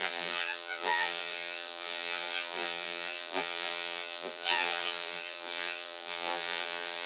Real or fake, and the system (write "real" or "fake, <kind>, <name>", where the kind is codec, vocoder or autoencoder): fake, vocoder, BigVGAN v2